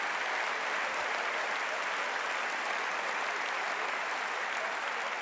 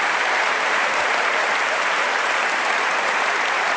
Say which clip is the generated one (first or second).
second